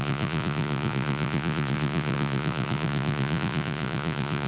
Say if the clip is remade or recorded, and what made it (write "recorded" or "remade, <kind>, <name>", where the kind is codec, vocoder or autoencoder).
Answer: remade, vocoder, Vocos